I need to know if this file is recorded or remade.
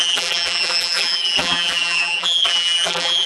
remade